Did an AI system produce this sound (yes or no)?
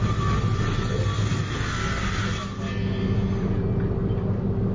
no